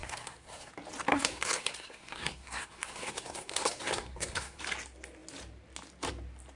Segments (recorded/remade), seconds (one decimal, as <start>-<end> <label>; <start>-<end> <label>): 0.0-0.7 remade; 0.7-1.1 recorded; 1.1-4.6 remade; 4.6-6.6 recorded